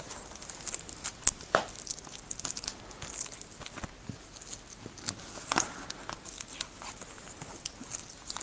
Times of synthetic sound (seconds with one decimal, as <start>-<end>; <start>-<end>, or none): none